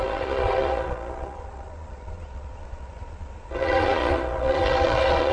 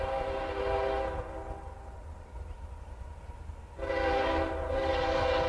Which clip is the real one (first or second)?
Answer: second